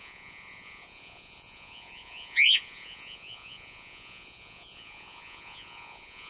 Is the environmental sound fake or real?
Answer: fake